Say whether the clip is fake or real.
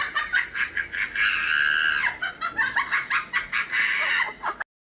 real